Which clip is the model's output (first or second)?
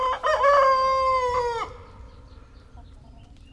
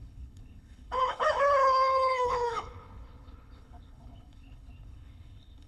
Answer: second